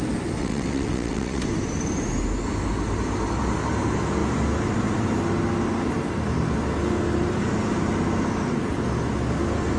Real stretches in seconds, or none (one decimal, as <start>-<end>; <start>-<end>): 0.0-0.4; 1.4-9.8